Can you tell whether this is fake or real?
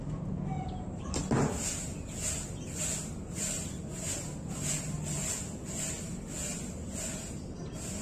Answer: real